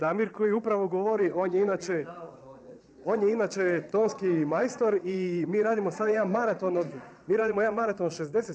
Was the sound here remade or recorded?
remade